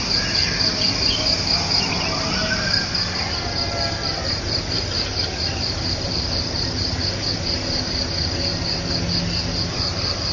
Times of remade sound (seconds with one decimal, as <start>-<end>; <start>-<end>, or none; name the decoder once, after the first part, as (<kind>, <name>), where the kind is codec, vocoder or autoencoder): 0.4-3.4 (vocoder, BigVGAN v2); 4.0-6.3